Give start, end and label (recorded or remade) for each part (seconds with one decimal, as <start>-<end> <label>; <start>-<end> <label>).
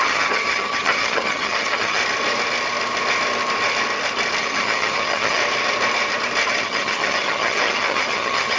0.0-2.0 remade; 2.0-4.4 recorded; 4.4-5.4 remade; 5.4-6.5 recorded; 6.5-8.6 remade